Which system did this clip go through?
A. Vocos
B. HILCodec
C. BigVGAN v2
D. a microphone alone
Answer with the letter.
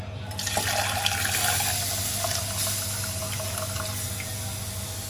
D